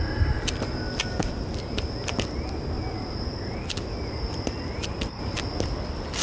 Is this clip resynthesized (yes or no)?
no